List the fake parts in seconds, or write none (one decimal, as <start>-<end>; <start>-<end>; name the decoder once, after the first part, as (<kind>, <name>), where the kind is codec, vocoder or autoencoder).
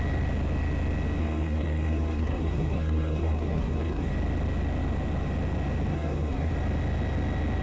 1.2-4.1 (codec, SNAC); 5.9-6.5